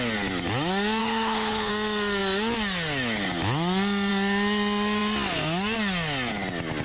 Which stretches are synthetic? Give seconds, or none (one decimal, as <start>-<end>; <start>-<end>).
1.0-1.7